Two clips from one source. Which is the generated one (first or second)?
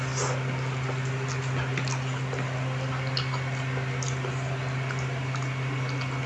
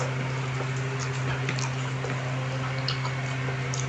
second